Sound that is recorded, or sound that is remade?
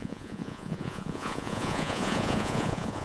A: remade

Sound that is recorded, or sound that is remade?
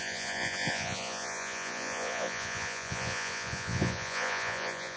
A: remade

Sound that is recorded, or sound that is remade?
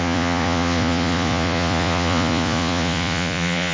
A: remade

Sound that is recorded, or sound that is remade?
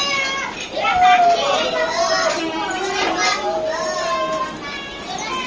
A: recorded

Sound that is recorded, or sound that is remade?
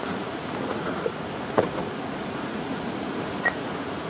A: remade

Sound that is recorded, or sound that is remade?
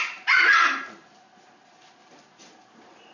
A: recorded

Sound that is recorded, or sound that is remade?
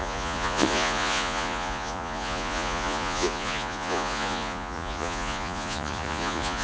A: remade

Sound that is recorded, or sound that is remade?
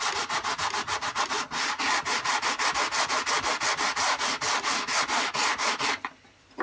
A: recorded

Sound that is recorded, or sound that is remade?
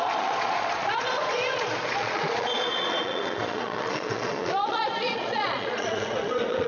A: remade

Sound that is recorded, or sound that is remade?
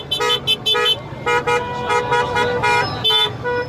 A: recorded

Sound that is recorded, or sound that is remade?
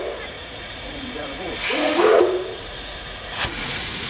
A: remade